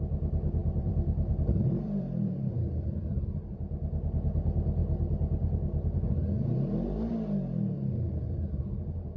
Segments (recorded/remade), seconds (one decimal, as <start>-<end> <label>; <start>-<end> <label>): 0.0-0.6 recorded; 0.6-3.3 remade; 3.3-9.2 recorded